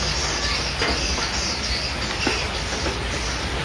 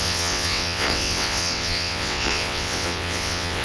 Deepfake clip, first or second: second